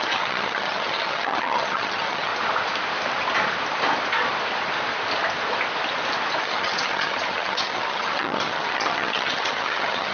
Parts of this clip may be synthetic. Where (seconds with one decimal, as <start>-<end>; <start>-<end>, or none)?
0.0-2.3; 6.4-10.1